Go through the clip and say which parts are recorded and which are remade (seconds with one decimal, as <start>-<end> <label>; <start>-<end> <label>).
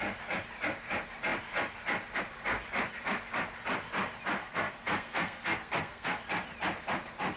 0.0-4.4 recorded; 4.4-6.2 remade; 6.2-7.4 recorded